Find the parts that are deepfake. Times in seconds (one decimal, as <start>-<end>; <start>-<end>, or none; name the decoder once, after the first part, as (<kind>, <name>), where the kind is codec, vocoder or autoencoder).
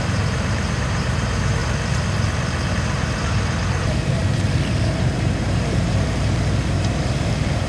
0.0-1.6 (vocoder, BigVGAN v2); 2.7-7.7